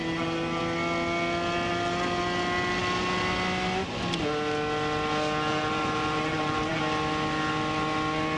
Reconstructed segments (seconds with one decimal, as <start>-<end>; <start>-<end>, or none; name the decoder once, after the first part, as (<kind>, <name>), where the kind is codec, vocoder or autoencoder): 0.0-0.6 (vocoder, BigVGAN v2); 5.5-6.8

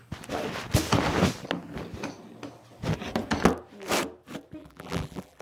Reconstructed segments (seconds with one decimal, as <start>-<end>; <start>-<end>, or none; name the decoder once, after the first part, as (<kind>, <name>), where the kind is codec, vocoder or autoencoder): 4.6-5.4 (vocoder, BigVGAN v2)

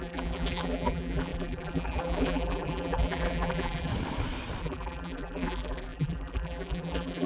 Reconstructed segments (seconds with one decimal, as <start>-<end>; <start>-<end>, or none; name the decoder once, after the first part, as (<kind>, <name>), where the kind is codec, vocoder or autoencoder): 0.0-3.9 (vocoder, BigVGAN v2); 4.6-7.3